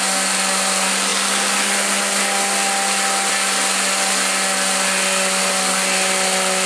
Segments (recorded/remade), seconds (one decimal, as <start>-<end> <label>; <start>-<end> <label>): 0.0-6.7 recorded